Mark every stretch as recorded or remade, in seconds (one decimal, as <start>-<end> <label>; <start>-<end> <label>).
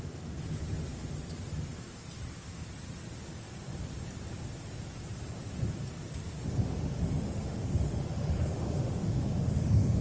0.0-6.2 recorded; 6.2-10.0 remade